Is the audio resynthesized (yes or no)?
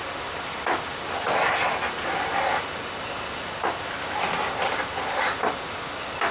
no